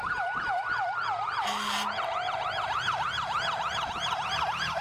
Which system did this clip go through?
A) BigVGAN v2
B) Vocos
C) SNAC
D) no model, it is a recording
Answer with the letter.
A